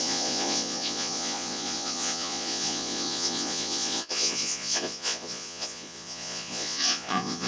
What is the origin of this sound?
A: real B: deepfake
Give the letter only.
B